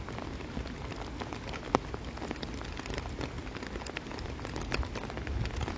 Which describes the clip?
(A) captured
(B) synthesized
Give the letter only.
A